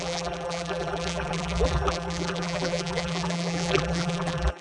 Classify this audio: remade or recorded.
remade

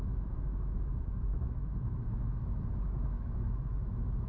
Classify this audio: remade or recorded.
remade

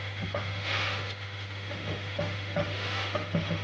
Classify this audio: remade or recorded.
remade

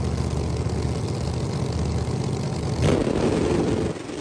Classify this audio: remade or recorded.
recorded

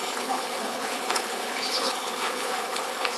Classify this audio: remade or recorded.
remade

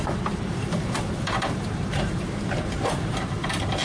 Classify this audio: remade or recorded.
remade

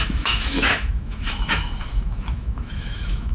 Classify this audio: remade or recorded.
remade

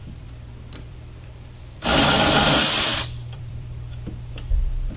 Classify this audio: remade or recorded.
remade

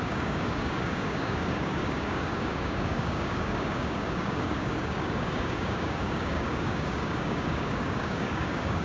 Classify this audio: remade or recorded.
remade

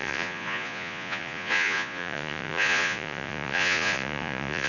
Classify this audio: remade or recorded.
remade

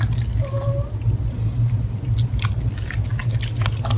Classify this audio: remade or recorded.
recorded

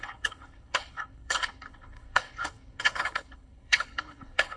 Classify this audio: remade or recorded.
remade